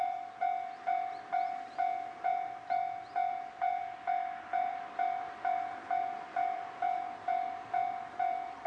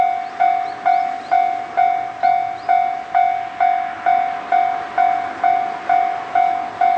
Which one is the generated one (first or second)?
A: first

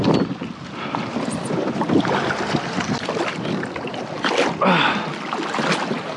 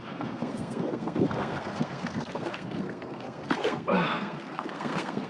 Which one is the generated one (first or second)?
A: second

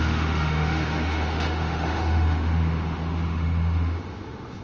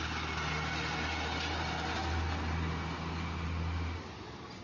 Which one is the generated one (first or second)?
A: first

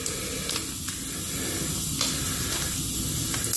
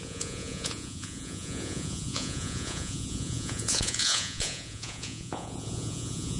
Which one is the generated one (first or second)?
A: second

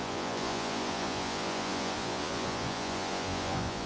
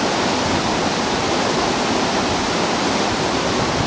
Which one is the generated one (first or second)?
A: first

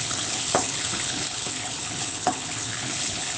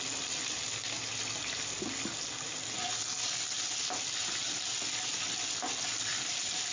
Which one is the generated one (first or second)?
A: first